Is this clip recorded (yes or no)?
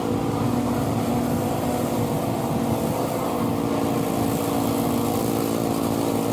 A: yes